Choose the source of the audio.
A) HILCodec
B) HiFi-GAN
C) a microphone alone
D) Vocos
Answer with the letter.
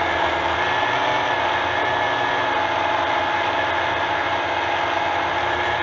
C